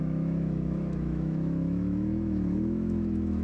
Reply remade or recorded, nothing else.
remade